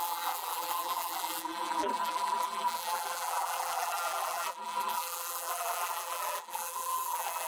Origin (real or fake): fake